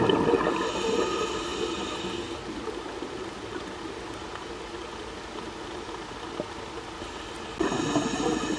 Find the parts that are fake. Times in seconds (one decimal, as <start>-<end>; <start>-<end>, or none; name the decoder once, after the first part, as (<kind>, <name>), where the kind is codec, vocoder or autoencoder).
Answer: none